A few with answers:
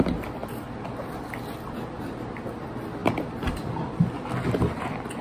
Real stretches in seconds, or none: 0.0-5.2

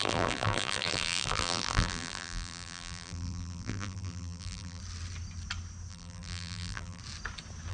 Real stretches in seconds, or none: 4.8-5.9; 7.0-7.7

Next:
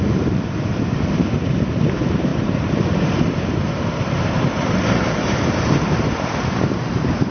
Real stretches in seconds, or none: none